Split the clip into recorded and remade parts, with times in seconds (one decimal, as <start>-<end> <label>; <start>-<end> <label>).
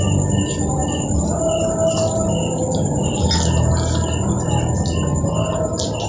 0.0-6.1 recorded